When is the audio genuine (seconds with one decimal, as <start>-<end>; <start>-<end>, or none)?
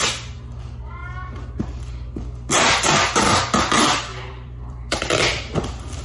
0.0-4.1; 5.0-6.0